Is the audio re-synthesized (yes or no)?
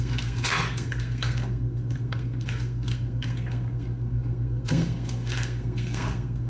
yes